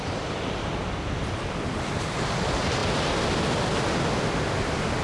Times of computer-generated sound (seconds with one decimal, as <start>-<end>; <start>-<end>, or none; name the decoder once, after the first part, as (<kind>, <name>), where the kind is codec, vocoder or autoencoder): none

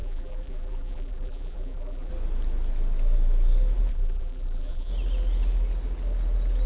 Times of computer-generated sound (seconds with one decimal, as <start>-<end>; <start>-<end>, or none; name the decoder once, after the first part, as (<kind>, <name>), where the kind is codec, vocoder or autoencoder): 0.0-2.1 (vocoder, BigVGAN v2); 3.9-4.9

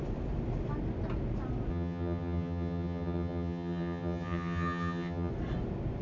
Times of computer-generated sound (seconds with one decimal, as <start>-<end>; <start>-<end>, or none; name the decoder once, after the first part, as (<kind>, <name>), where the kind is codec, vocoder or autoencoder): 1.7-5.3 (vocoder, HiFi-GAN)

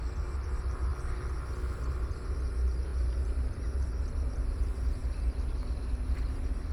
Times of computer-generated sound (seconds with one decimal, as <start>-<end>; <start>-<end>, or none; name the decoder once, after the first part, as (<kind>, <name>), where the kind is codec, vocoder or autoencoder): 0.0-0.9 (vocoder, BigVGAN v2); 2.1-6.7